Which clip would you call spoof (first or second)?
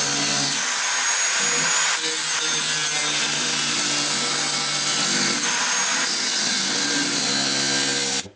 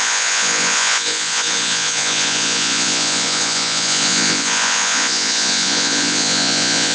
second